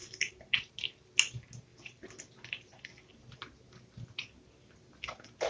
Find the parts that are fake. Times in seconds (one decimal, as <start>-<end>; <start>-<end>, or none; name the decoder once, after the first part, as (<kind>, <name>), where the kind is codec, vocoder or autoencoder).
none